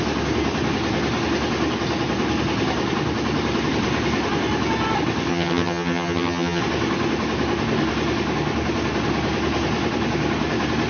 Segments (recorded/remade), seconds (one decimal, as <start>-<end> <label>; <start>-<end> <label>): 0.0-5.3 recorded; 5.3-6.6 remade; 6.6-10.9 recorded